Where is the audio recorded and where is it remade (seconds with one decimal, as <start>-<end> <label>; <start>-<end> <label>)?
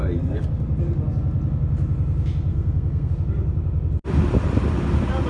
0.0-2.5 recorded; 2.5-3.1 remade; 3.1-5.3 recorded